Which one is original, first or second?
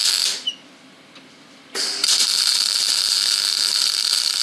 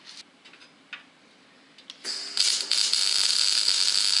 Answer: second